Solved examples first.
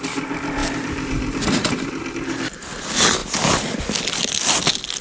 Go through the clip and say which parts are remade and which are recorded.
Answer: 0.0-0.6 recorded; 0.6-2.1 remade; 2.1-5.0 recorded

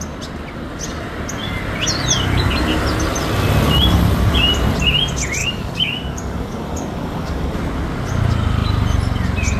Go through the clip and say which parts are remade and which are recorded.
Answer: 0.0-5.4 recorded; 5.4-7.6 remade; 7.6-9.6 recorded

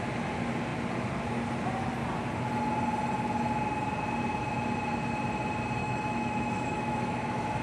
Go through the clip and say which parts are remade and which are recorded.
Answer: 0.0-5.8 recorded; 5.8-7.6 remade

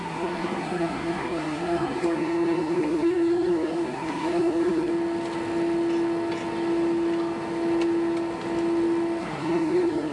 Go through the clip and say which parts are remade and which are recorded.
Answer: 0.0-4.9 remade; 4.9-9.2 recorded; 9.2-10.1 remade

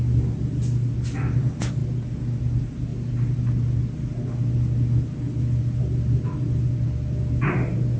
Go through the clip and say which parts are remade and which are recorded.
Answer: 0.0-8.0 recorded

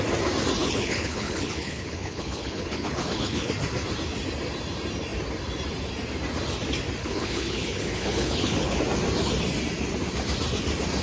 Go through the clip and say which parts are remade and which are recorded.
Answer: 0.0-0.6 recorded; 0.6-3.5 remade; 3.5-7.0 recorded; 7.0-8.8 remade; 8.8-11.0 recorded

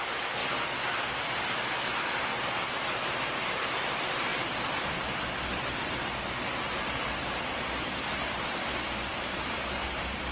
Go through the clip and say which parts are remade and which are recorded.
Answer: 0.0-0.4 recorded; 0.4-3.6 remade; 3.6-4.3 recorded; 4.3-5.0 remade; 5.0-10.3 recorded